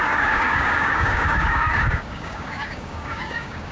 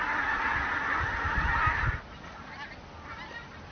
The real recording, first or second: second